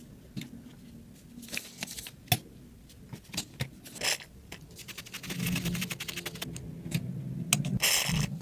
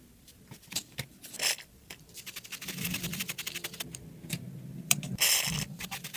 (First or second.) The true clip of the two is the first